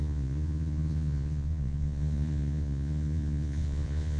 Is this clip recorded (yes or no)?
no